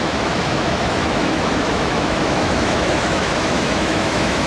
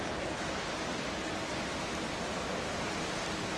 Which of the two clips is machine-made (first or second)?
first